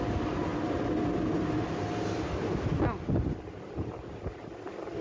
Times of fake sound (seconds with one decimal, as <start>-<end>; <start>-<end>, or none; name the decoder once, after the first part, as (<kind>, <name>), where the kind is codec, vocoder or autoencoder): none